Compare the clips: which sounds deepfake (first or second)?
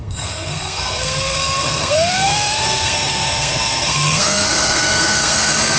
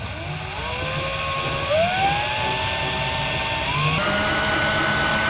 first